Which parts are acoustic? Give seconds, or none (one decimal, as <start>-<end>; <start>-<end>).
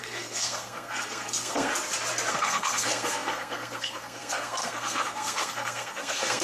1.7-2.3